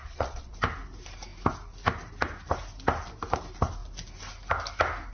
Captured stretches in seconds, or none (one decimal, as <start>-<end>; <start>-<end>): 0.5-5.1